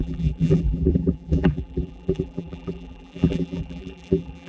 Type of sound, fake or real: fake